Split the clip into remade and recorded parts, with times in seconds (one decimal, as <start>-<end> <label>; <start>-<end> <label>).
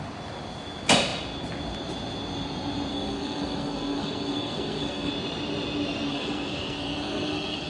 0.0-2.9 recorded; 2.9-5.1 remade; 5.1-6.1 recorded; 6.1-7.7 remade